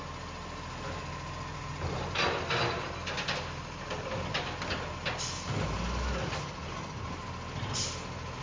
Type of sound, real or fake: real